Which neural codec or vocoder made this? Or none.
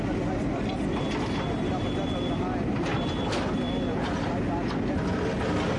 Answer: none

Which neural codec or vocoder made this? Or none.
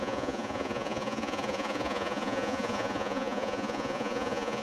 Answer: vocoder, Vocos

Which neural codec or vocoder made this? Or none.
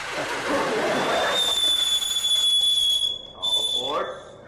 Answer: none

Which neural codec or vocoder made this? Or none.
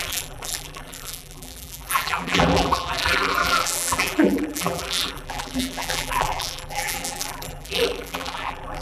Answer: vocoder, BigVGAN v2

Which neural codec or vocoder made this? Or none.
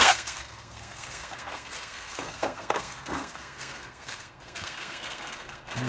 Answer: codec, SNAC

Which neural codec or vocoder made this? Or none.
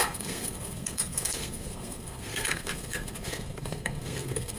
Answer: codec, SNAC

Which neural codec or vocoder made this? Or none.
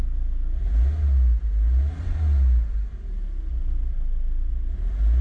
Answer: none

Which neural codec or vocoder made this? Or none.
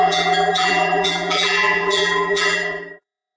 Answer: vocoder, BigVGAN v2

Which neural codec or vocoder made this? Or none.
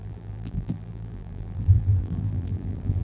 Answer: vocoder, BigVGAN v2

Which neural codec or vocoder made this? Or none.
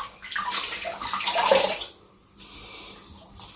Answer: none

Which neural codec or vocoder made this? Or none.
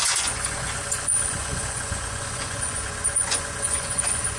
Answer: vocoder, Vocos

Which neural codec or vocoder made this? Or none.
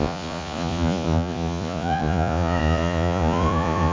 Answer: vocoder, Vocos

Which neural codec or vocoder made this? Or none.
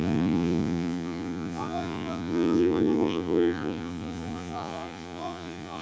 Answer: vocoder, Vocos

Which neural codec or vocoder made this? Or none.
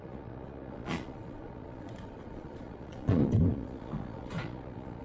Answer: vocoder, Vocos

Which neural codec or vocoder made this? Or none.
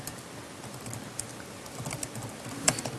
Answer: none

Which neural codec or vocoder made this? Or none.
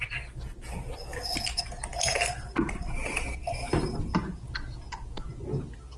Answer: none